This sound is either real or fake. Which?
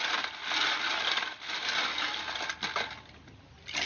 real